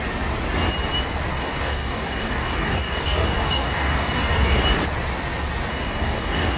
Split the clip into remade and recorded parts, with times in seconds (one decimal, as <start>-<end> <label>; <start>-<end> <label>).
0.0-1.3 recorded; 1.3-4.6 remade; 4.6-5.7 recorded; 5.7-6.6 remade